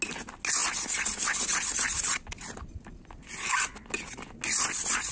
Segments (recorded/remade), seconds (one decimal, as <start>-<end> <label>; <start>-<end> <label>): 0.0-5.1 recorded